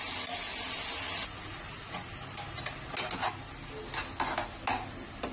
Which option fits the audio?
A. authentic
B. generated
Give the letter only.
A